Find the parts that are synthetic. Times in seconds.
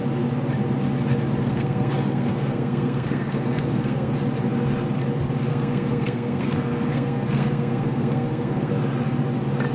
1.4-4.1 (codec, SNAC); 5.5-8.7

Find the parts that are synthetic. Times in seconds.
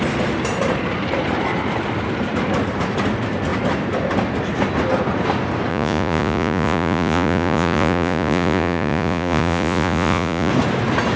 5.7-10.5 (vocoder, Vocos)